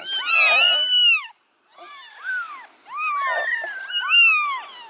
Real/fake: real